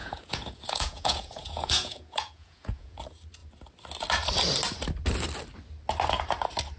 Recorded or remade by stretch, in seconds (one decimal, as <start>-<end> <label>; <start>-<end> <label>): 0.0-3.0 remade; 3.0-6.8 recorded